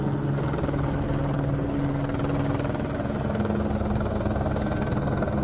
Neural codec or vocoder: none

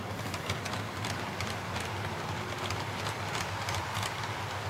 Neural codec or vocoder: none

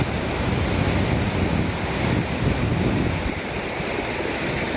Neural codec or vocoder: none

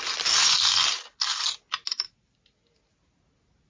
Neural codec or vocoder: none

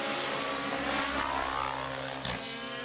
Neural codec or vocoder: none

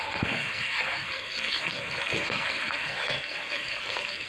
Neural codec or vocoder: codec, SNAC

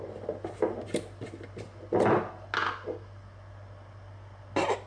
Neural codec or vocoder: none